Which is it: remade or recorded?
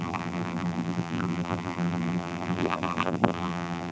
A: remade